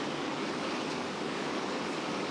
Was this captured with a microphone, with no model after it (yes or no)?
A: no